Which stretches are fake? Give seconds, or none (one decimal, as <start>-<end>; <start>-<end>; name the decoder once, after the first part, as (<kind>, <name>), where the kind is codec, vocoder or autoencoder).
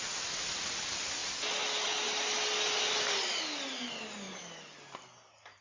none